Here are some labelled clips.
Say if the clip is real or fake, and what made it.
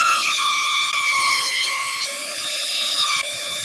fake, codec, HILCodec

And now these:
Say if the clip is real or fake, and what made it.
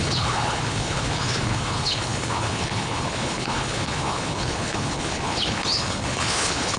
fake, codec, HILCodec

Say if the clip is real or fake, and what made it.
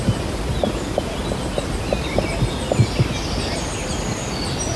real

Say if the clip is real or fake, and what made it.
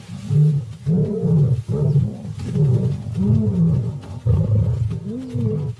real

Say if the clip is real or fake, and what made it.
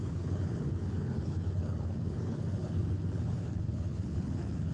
fake, codec, HILCodec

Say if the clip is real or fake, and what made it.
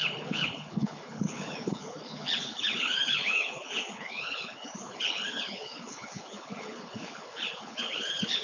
fake, codec, HILCodec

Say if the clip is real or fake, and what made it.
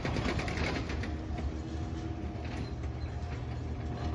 real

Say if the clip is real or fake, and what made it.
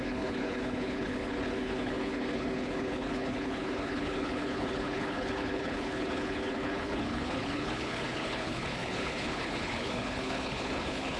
fake, codec, HILCodec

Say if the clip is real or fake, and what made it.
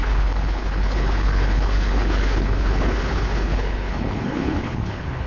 fake, codec, HILCodec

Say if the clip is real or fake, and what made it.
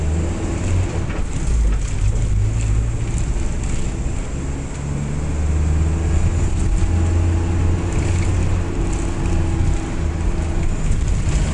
real